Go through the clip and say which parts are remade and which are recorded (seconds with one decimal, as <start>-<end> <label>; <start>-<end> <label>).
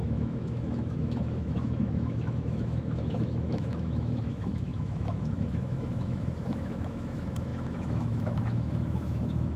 0.0-9.6 remade